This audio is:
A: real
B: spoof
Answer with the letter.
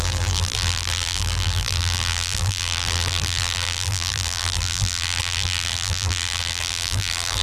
B